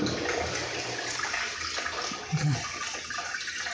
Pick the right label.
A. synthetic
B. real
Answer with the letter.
B